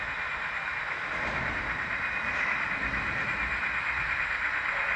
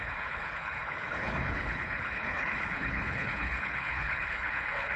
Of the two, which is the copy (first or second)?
second